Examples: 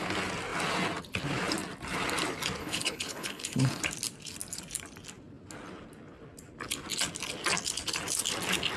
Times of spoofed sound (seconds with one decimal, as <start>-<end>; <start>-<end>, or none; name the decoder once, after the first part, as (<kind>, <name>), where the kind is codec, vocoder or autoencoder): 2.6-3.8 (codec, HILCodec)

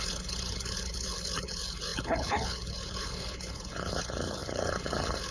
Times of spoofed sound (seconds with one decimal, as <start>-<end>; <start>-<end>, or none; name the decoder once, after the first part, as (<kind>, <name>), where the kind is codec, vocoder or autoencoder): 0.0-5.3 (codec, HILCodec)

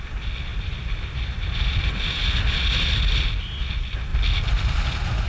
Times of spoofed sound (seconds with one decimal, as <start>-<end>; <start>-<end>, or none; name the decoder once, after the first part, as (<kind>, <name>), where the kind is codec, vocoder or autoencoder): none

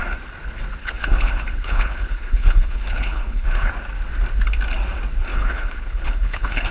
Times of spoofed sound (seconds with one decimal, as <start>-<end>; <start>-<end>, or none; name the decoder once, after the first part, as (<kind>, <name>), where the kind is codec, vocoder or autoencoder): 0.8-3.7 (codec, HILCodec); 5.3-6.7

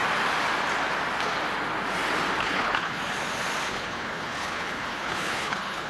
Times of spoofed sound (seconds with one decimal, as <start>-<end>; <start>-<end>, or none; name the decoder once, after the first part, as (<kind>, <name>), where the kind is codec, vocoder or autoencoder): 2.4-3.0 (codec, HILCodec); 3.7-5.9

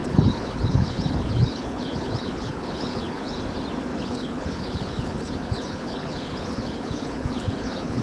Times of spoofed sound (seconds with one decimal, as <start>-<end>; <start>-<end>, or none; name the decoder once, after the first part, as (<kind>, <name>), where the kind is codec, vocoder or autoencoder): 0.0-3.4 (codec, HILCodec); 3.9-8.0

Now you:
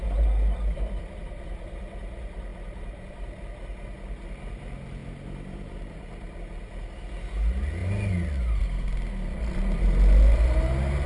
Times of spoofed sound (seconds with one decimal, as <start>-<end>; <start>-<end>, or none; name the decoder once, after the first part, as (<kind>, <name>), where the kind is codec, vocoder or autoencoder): none